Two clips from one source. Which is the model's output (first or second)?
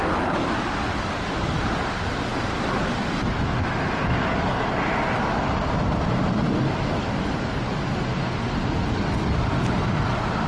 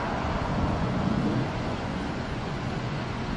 second